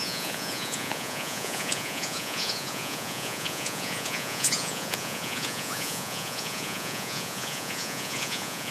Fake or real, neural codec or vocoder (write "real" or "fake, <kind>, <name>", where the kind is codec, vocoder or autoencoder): fake, vocoder, Vocos